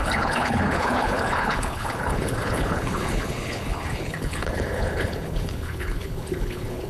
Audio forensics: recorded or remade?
remade